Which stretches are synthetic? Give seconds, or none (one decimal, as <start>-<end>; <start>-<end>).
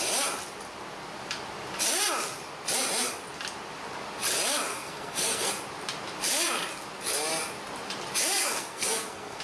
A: 4.7-5.5; 8.4-9.4